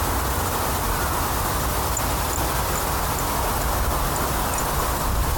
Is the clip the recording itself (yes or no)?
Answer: yes